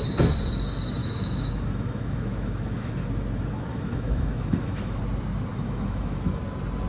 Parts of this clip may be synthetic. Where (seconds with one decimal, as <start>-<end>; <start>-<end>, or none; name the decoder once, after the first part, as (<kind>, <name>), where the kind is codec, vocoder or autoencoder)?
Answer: 1.0-2.9 (autoencoder, DAC-VAE); 3.7-5.0; 5.5-6.4

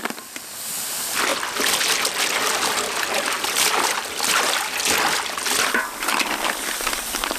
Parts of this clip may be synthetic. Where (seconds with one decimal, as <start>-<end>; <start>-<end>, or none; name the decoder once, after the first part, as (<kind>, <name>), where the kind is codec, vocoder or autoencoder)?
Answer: none